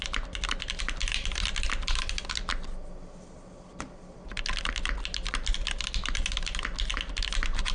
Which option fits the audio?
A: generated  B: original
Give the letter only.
B